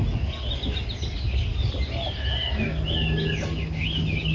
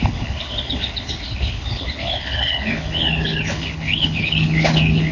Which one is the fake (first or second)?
second